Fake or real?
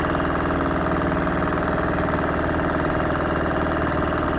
real